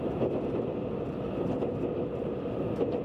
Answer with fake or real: real